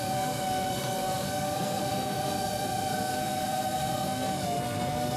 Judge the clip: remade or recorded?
remade